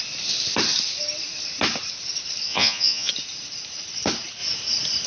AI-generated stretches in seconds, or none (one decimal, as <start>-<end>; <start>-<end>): 2.5-3.1